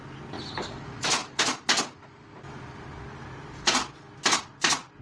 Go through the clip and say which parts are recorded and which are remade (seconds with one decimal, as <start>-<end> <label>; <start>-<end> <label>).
0.0-5.0 recorded

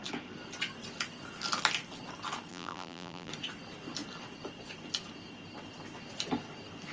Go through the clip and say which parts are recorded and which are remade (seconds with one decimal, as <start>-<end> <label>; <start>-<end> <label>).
0.0-2.5 recorded; 2.5-3.3 remade; 3.3-6.9 recorded

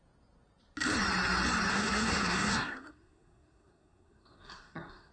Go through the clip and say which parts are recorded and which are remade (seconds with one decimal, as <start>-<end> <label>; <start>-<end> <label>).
0.0-1.7 recorded; 1.7-5.1 remade

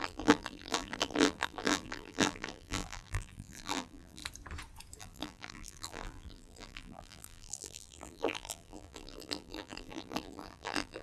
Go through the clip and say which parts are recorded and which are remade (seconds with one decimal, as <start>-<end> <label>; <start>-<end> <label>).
0.0-4.2 remade; 4.2-5.0 recorded; 5.0-11.0 remade

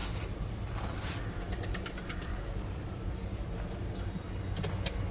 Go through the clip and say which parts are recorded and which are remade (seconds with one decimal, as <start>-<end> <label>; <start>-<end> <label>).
0.0-3.1 remade; 3.1-5.1 recorded

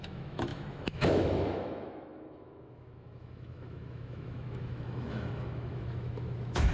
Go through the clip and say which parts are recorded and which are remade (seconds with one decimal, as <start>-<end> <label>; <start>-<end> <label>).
0.0-6.7 remade

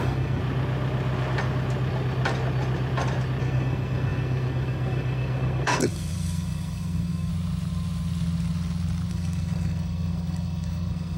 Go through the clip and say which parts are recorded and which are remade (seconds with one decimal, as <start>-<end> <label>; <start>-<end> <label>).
0.0-0.4 remade; 0.4-3.4 recorded; 3.4-7.3 remade; 7.3-9.1 recorded; 9.1-11.2 remade

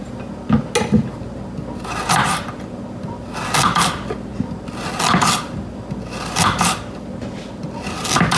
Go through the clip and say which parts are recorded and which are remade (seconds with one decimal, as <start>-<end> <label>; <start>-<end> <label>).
0.0-8.4 recorded